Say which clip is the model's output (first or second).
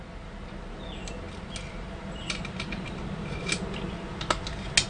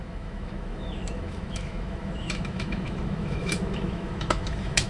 second